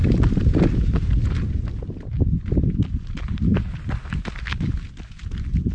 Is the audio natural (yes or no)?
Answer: yes